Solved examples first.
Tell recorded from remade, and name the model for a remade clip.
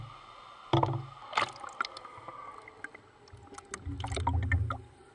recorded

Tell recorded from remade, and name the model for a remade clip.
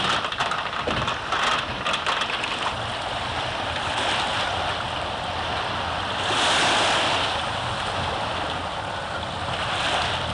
recorded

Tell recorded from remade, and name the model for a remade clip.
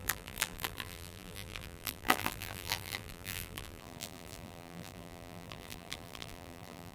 remade, vocoder, BigVGAN v2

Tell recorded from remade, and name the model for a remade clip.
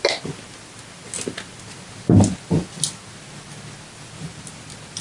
recorded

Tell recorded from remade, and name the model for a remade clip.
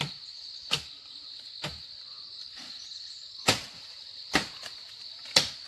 recorded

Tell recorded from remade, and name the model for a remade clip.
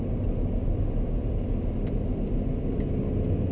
recorded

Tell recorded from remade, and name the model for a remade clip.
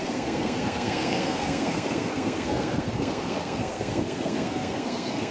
remade, codec, SNAC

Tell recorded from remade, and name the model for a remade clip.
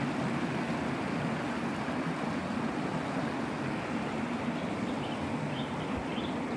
recorded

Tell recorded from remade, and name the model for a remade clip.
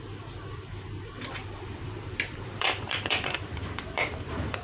remade, vocoder, BigVGAN v2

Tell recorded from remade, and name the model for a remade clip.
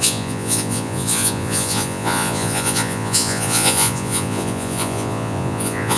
remade, vocoder, Vocos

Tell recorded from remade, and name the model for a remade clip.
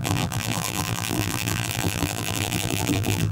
remade, vocoder, BigVGAN v2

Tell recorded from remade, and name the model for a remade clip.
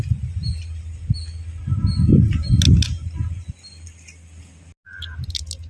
recorded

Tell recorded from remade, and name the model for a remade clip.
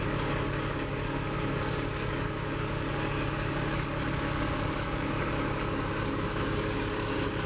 remade, codec, DAC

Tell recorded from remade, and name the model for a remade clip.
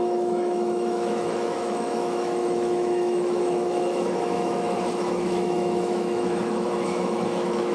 remade, autoencoder, DAC-VAE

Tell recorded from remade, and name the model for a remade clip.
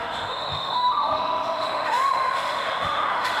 remade, autoencoder, DAC-VAE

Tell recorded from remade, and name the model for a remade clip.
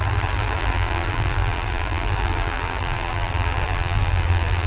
remade, vocoder, BigVGAN v2